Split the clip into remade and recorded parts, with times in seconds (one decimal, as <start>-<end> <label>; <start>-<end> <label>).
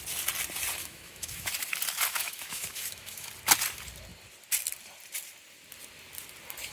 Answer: 0.0-0.8 recorded; 0.8-1.5 remade; 1.5-2.1 recorded; 2.1-3.3 remade; 3.3-6.7 recorded